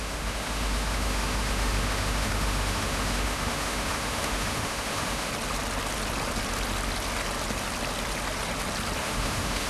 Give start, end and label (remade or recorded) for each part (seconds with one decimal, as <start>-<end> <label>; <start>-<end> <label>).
0.0-5.3 remade; 5.3-9.0 recorded; 9.0-9.7 remade